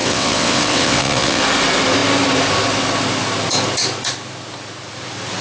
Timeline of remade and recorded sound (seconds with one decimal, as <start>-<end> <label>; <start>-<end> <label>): 0.0-1.4 remade; 1.4-5.4 recorded